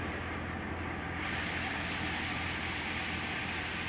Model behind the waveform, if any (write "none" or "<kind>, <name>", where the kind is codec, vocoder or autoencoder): none